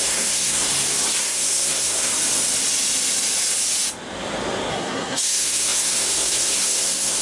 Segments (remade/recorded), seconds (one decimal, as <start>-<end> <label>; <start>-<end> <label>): 0.0-0.7 remade; 0.7-1.2 recorded; 1.2-2.1 remade; 2.1-4.7 recorded; 4.7-7.2 remade